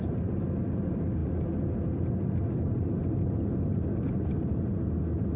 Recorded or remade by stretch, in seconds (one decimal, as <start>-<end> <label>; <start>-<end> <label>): 0.0-5.4 recorded